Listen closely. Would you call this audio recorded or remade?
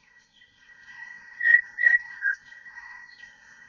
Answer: remade